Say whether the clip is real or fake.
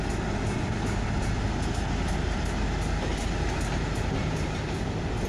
real